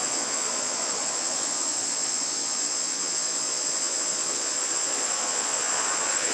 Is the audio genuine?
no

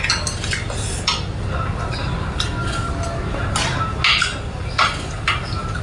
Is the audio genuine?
yes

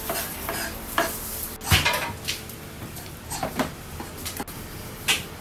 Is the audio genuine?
yes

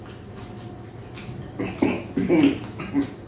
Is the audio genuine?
yes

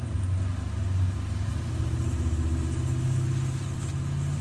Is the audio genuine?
yes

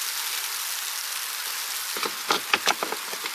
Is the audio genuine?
yes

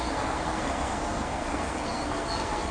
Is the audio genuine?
no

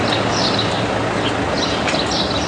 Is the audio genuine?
yes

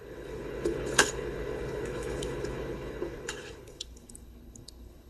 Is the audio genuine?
no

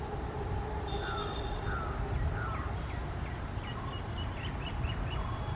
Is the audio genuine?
yes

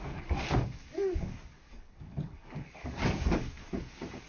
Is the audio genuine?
no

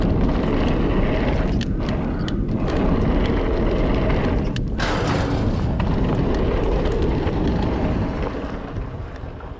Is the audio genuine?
yes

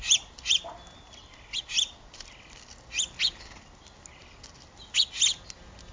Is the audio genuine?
yes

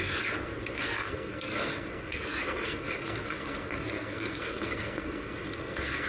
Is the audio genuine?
no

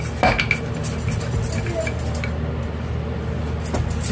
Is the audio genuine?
yes